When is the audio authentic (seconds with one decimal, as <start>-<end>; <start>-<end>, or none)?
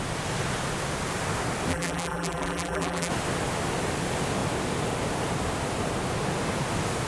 0.0-1.7; 3.1-7.1